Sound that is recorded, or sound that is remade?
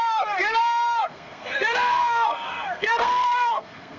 remade